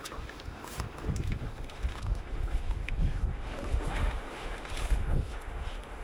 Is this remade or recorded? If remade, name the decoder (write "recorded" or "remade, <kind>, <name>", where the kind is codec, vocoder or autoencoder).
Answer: remade, autoencoder, DAC-VAE